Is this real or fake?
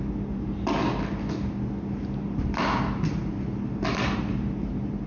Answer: real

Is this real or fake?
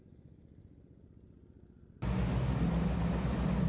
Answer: real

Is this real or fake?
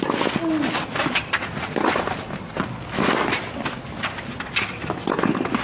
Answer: real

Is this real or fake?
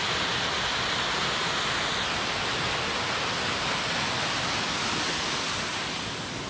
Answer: real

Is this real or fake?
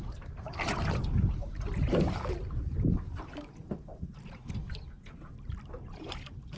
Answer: real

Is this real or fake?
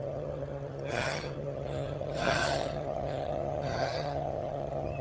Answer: fake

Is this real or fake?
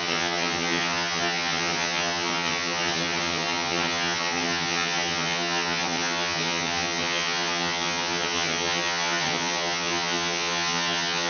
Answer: fake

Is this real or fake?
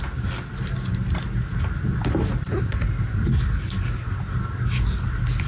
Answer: real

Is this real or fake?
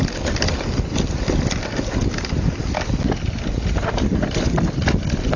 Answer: real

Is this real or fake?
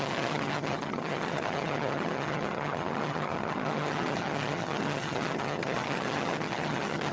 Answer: fake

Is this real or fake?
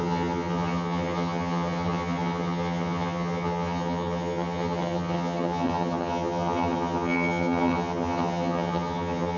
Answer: fake